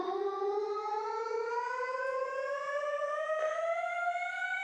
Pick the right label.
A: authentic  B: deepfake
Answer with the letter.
A